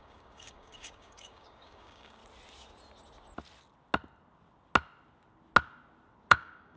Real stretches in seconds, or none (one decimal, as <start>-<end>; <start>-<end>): 2.2-6.3